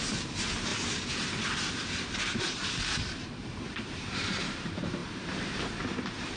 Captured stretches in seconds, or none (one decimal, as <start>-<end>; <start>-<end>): 0.7-2.4